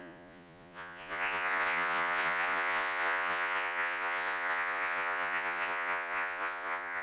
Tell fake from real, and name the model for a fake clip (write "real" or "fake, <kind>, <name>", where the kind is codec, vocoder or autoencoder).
fake, vocoder, Vocos